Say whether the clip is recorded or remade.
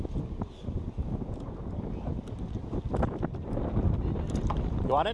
recorded